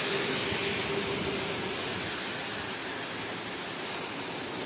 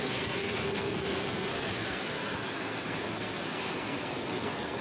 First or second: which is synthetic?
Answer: second